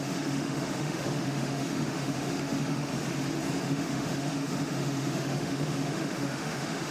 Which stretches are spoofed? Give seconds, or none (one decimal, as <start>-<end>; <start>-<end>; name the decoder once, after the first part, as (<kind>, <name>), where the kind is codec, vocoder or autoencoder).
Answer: 0.0-2.9 (autoencoder, DAC-VAE); 3.6-6.9